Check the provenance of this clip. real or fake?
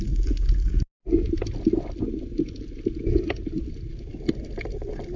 real